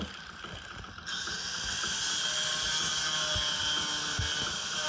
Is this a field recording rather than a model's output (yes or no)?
yes